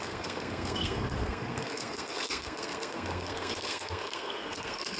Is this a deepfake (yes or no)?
yes